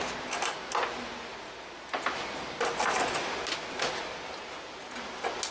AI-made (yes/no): no